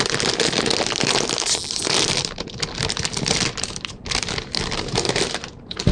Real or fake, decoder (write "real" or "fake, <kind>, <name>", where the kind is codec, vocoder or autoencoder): real